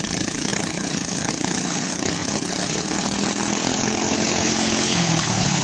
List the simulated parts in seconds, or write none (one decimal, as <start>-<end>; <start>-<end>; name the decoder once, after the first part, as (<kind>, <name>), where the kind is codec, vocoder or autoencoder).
0.0-5.6 (codec, HILCodec)